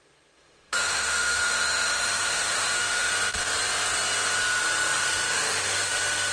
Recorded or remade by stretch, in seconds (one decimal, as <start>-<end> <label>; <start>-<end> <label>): 0.0-3.1 remade; 3.1-4.6 recorded; 4.6-6.3 remade